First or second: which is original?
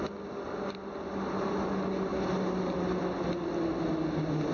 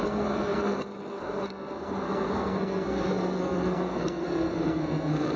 first